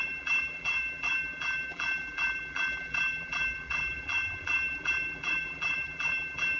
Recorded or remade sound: remade